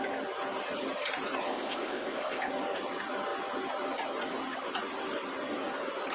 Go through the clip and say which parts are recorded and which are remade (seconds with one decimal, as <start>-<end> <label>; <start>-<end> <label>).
0.0-1.5 recorded; 1.5-2.5 remade; 2.5-6.1 recorded